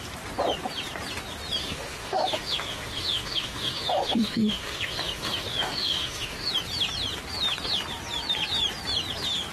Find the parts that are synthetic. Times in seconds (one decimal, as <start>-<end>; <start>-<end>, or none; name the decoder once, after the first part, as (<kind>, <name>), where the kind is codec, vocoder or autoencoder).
1.6-6.5 (autoencoder, DAC-VAE)